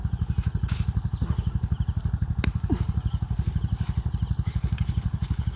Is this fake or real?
real